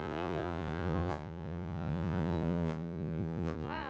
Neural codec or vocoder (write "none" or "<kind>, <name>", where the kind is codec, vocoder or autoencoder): vocoder, Vocos